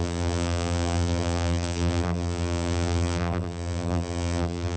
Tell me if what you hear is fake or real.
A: fake